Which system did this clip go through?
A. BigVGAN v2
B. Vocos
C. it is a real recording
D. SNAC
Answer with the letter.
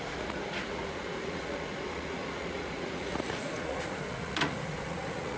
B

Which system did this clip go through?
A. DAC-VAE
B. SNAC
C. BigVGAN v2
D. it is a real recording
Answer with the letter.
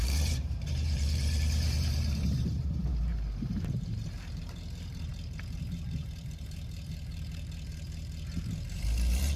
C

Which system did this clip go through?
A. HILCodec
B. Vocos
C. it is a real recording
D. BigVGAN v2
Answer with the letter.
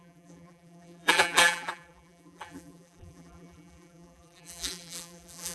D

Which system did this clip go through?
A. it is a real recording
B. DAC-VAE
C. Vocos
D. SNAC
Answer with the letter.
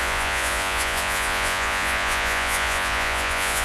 C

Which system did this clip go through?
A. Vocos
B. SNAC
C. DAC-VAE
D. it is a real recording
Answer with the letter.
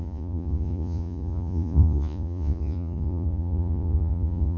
A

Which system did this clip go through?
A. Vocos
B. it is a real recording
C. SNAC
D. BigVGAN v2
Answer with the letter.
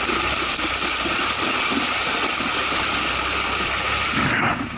B